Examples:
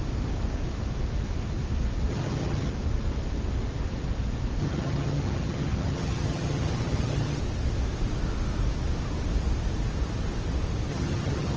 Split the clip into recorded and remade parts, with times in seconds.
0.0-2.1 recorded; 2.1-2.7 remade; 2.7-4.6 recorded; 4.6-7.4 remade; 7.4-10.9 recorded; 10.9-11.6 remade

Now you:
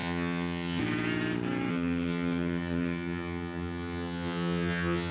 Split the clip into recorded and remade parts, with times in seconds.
0.0-0.8 remade; 0.8-1.7 recorded; 1.7-5.1 remade

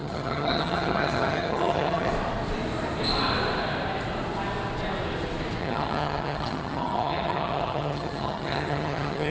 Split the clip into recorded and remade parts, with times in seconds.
0.0-2.1 remade; 2.1-5.6 recorded; 5.6-9.3 remade